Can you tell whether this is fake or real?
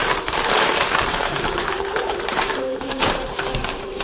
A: fake